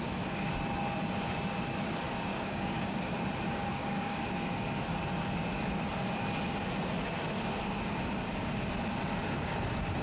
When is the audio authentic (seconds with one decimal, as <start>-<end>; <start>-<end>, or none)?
0.0-2.3; 3.1-3.7; 4.3-10.0

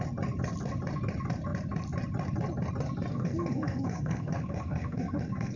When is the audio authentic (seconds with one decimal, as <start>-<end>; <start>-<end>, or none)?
0.0-3.1

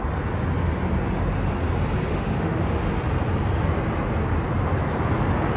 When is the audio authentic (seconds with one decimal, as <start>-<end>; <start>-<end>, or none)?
0.0-2.1; 2.9-5.6

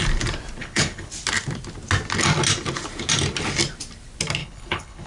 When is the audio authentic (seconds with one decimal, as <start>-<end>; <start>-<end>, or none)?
0.0-0.6; 1.1-4.4

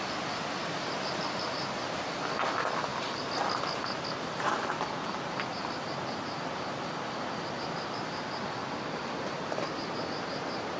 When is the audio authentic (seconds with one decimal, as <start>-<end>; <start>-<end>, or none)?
0.0-0.6; 1.2-9.0; 9.8-10.8

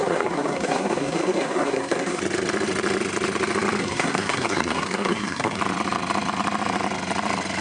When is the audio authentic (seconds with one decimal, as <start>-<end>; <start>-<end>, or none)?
2.2-3.8; 5.6-7.6

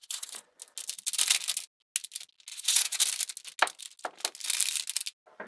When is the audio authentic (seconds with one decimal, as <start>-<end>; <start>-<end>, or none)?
0.6-2.5; 3.0-5.5